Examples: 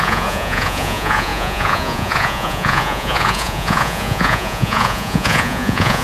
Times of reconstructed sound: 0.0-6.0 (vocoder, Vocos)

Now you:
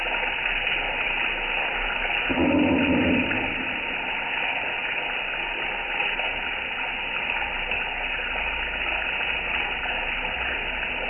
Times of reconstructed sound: none